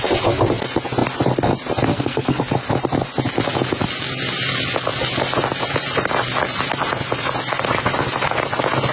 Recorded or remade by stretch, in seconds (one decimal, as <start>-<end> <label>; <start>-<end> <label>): 0.0-1.9 recorded; 1.9-2.4 remade; 2.4-8.9 recorded